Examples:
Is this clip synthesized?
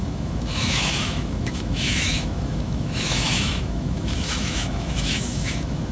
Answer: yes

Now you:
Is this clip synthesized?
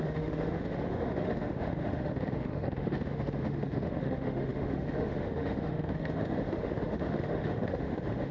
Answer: yes